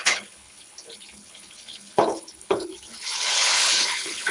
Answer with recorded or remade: remade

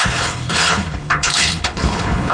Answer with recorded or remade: remade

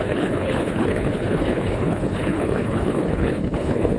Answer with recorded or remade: remade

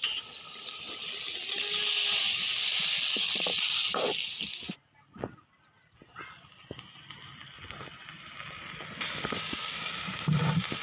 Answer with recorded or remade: recorded